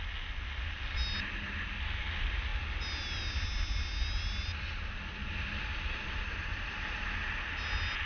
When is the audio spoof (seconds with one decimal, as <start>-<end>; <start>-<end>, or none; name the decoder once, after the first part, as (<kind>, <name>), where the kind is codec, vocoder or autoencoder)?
6.5-7.0 (vocoder, BigVGAN v2)